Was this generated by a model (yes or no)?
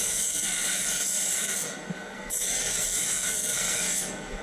yes